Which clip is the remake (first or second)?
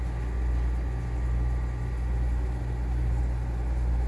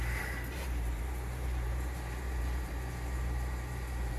second